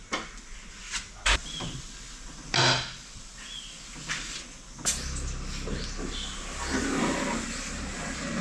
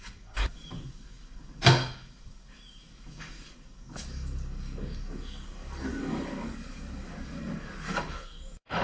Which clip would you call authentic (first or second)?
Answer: first